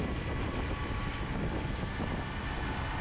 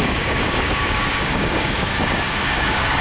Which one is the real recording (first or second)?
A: first